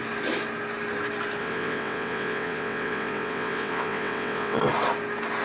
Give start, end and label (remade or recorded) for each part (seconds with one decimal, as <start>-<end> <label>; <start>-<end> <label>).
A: 0.0-1.4 recorded; 1.4-4.6 remade; 4.6-5.4 recorded